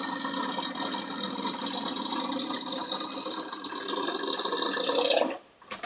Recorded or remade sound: recorded